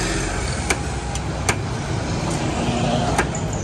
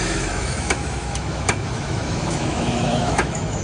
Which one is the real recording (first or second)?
first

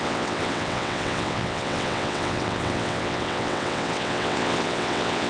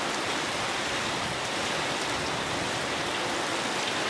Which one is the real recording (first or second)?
second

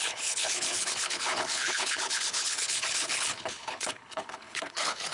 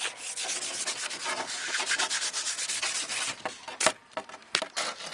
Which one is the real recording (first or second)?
second